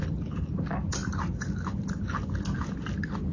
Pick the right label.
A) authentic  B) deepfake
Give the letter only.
A